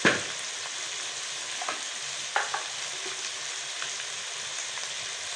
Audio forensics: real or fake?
real